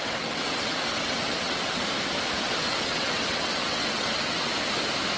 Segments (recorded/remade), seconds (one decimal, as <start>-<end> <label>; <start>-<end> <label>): 0.0-1.8 remade; 1.8-2.5 recorded; 2.5-4.5 remade; 4.5-5.2 recorded